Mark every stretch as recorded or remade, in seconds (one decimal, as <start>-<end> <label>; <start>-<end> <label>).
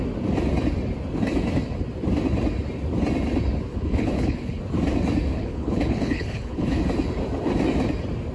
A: 0.0-3.7 recorded; 3.7-4.6 remade; 4.6-5.3 recorded; 5.3-6.8 remade; 6.8-8.3 recorded